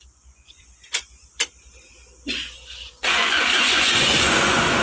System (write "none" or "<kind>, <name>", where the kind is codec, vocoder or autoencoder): vocoder, Vocos